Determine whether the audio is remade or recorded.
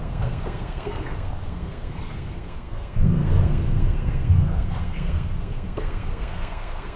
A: remade